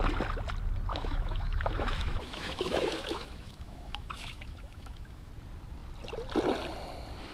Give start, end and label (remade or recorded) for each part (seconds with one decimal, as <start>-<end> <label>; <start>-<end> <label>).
0.0-0.9 recorded; 0.9-5.3 remade; 5.3-7.3 recorded